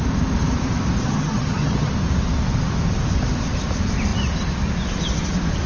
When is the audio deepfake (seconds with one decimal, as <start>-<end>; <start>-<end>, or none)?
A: 1.0-1.9